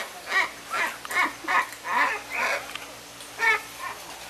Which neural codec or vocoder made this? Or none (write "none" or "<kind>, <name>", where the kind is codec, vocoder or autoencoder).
none